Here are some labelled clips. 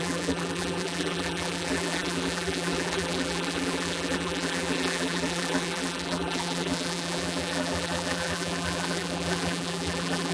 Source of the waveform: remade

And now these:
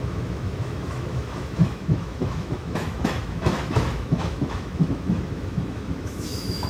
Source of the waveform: remade